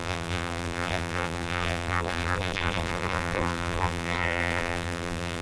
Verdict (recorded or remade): remade